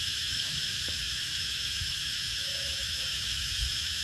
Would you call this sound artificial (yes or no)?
yes